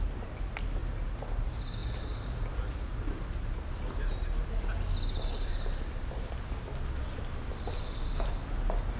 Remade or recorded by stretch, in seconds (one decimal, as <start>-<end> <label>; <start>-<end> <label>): 0.0-0.8 recorded; 0.8-1.4 remade; 1.4-9.0 recorded